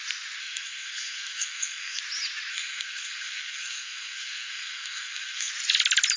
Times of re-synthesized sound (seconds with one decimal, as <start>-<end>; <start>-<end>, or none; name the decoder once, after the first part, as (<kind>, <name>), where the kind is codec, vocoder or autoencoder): 0.4-2.0 (codec, SNAC); 2.5-5.5